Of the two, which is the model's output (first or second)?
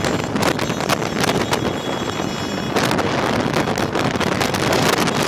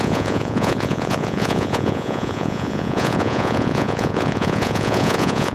second